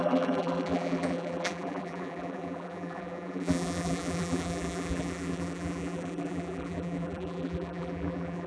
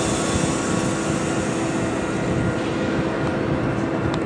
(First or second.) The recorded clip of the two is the second